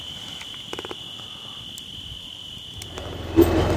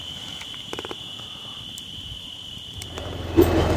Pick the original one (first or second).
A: first